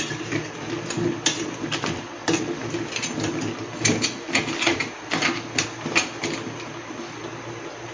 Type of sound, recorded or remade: recorded